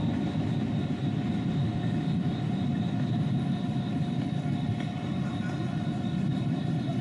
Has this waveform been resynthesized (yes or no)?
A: no